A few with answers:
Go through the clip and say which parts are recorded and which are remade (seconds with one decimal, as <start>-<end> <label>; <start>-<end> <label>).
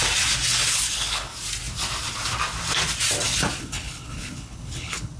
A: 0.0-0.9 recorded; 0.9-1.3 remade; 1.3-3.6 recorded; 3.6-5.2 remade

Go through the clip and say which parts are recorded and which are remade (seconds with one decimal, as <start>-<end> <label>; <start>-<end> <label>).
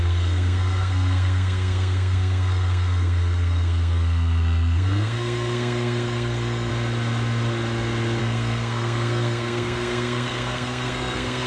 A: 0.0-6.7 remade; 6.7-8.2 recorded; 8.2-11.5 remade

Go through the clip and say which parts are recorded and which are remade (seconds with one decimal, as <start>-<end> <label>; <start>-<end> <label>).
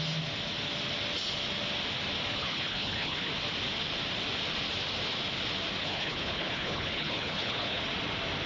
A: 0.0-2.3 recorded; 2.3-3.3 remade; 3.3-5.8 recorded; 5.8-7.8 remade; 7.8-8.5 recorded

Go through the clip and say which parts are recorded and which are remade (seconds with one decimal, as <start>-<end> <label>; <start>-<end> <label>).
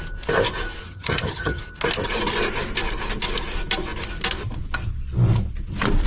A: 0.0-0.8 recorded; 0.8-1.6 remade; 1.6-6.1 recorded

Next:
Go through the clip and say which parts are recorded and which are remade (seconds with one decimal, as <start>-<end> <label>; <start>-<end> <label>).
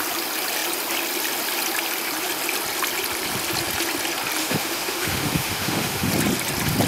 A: 0.0-4.4 recorded; 4.4-6.1 remade; 6.1-6.9 recorded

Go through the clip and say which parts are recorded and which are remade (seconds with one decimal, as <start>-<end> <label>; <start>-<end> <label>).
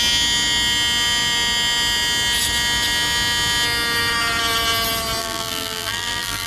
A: 0.0-5.2 recorded; 5.2-6.5 remade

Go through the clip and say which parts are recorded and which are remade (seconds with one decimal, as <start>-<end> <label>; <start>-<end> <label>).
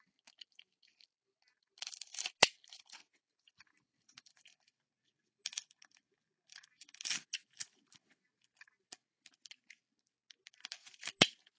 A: 0.0-11.6 recorded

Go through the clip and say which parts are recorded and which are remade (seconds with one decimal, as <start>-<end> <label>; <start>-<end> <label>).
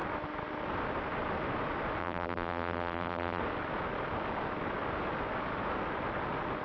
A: 0.0-2.0 recorded; 2.0-3.4 remade; 3.4-6.6 recorded